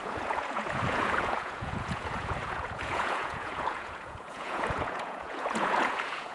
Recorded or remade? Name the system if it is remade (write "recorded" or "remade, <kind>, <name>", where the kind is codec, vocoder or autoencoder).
remade, vocoder, Vocos